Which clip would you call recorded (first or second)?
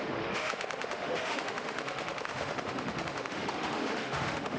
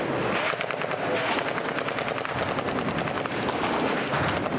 second